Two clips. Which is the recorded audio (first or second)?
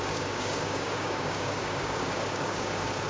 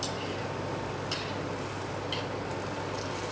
second